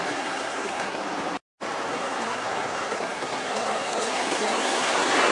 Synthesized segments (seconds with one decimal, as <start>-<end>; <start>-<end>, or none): 0.0-1.0; 1.9-5.3